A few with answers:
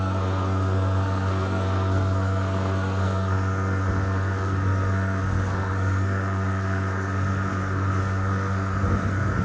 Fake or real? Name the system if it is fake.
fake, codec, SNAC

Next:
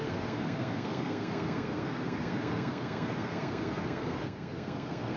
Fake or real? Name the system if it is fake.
fake, codec, SNAC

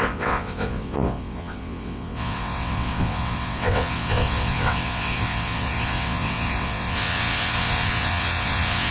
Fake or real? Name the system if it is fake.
fake, vocoder, WaveNeXt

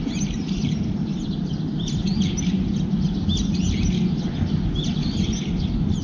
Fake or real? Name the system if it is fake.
real